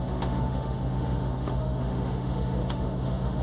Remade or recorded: remade